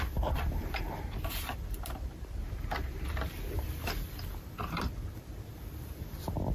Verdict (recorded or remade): remade